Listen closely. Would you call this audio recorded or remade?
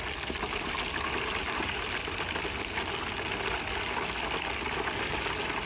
recorded